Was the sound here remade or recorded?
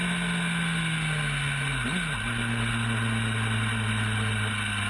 recorded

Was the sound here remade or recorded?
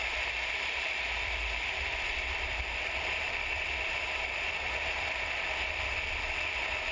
remade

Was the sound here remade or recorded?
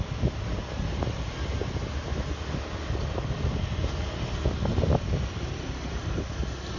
recorded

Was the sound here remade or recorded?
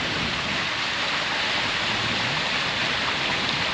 recorded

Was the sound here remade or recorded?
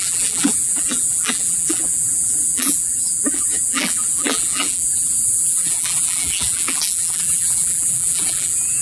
remade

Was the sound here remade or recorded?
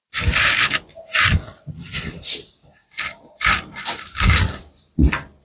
remade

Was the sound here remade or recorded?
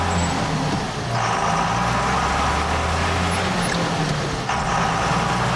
recorded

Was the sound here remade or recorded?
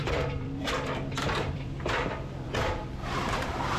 remade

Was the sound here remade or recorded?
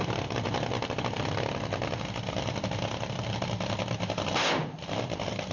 remade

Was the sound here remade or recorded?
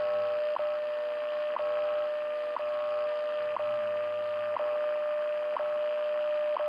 recorded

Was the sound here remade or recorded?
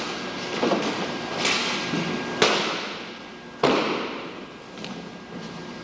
recorded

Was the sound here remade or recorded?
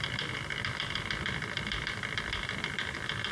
remade